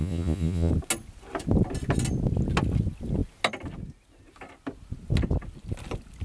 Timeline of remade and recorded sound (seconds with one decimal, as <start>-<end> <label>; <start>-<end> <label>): 0.0-0.7 remade; 0.7-6.2 recorded